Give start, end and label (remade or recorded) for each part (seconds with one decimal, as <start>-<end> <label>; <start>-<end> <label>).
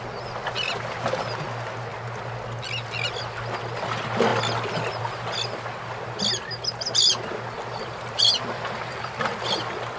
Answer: 0.0-10.0 recorded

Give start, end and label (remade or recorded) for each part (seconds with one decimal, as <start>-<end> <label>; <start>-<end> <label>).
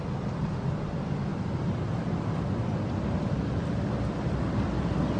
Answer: 0.0-5.2 recorded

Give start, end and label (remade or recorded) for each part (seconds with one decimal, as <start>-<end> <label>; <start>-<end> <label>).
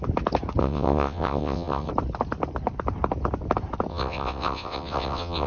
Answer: 0.0-0.6 recorded; 0.6-1.9 remade; 1.9-3.9 recorded; 3.9-5.5 remade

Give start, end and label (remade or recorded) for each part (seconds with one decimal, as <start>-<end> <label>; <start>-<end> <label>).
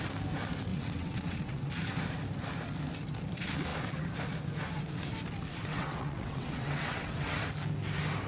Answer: 0.0-0.7 recorded; 0.7-1.7 remade; 1.7-5.7 recorded; 5.7-7.5 remade; 7.5-8.3 recorded